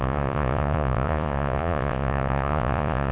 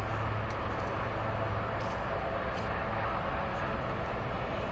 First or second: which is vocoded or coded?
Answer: first